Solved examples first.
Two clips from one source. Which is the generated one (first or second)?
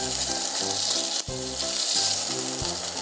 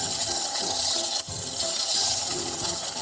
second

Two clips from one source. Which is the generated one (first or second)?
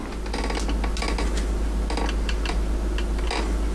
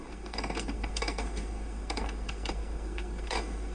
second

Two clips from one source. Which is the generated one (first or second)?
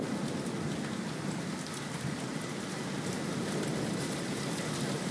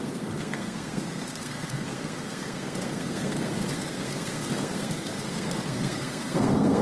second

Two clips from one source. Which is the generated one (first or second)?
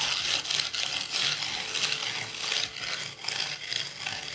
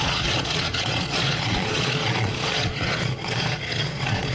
second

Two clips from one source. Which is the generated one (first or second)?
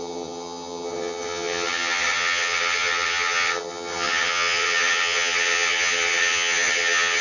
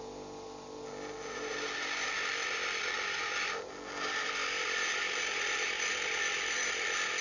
first